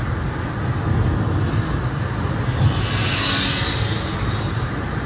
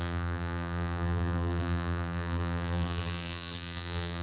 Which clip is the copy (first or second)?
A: second